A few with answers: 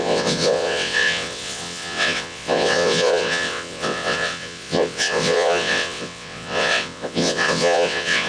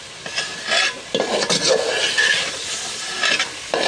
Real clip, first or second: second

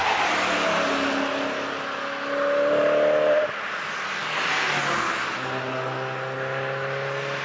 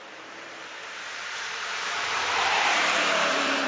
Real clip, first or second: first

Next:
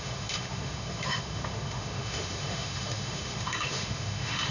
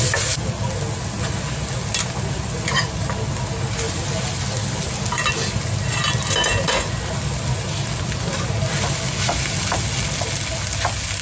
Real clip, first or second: second